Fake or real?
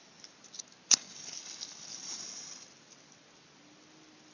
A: real